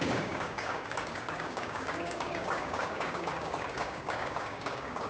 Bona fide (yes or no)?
no